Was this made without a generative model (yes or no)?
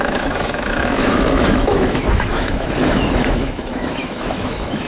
no